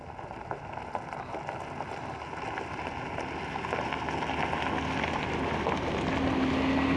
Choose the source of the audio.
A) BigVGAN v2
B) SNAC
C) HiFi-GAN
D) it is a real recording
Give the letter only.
D